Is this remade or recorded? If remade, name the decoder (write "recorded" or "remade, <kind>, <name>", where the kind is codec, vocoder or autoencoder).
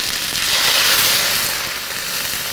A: recorded